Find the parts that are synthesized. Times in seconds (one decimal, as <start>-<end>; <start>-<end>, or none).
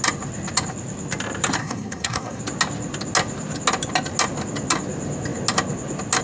1.6-2.4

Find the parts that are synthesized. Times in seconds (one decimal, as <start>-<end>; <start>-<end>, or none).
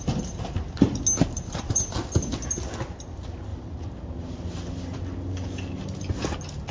none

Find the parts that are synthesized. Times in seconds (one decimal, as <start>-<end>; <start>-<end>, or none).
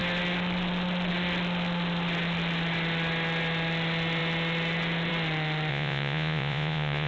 5.7-7.1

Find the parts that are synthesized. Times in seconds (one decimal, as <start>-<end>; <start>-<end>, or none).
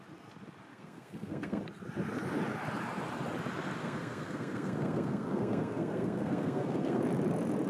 0.7-1.6; 3.8-7.0